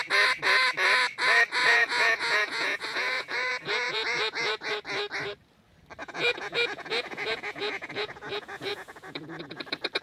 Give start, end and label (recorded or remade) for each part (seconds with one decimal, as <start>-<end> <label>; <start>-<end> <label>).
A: 0.0-1.6 recorded; 1.6-4.7 remade; 4.7-6.0 recorded; 6.0-9.6 remade; 9.6-10.0 recorded